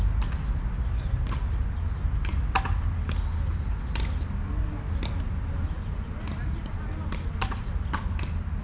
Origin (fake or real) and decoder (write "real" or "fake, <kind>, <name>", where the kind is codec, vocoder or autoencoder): real